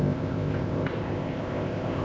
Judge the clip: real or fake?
fake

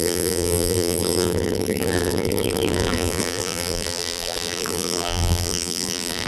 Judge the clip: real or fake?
fake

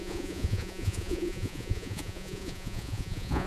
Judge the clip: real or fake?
fake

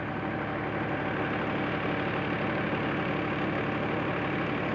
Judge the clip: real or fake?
real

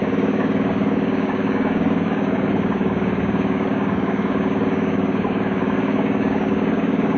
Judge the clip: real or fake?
fake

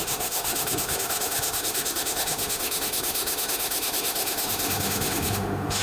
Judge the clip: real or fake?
fake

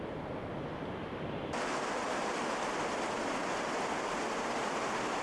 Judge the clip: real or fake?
real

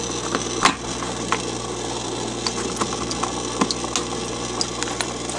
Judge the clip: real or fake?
real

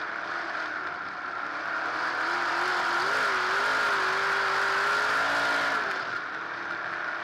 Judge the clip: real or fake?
real